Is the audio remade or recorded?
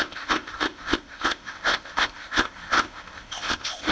remade